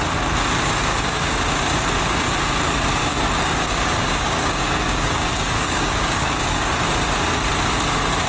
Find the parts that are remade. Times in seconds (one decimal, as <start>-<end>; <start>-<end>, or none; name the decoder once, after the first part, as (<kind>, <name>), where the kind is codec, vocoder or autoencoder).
0.9-1.4 (codec, DAC); 3.0-6.7